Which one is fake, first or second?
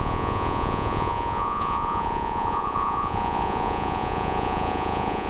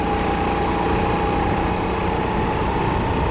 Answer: first